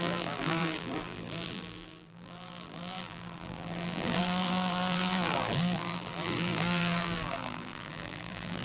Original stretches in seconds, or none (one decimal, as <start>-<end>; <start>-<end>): none